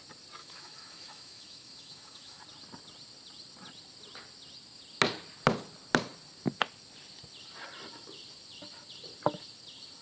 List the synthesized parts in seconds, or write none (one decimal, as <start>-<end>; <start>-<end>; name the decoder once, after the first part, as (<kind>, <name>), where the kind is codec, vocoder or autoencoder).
0.4-2.4 (autoencoder, DAC-VAE)